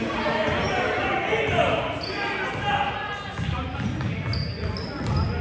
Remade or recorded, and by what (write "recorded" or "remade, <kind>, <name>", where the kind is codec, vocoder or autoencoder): recorded